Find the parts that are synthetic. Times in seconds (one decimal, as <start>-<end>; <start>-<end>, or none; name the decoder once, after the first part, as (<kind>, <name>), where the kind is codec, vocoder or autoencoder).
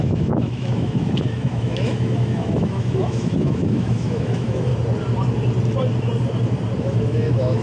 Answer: 0.0-4.7 (autoencoder, DAC-VAE); 6.8-7.6